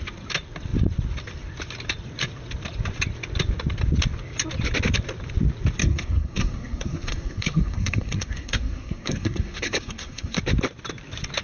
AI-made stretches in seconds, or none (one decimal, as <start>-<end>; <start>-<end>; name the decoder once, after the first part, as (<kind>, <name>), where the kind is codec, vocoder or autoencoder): 5.8-10.4 (codec, SNAC)